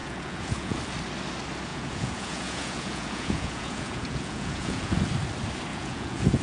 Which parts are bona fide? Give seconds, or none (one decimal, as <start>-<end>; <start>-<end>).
0.8-1.7; 5.0-5.7